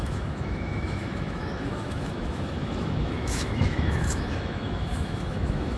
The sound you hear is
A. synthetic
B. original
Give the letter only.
A